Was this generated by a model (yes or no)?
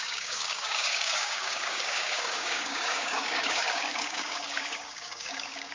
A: yes